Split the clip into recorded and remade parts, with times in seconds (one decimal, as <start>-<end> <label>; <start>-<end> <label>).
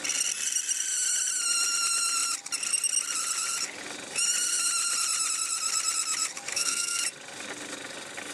0.0-6.5 recorded; 6.5-7.0 remade; 7.0-8.3 recorded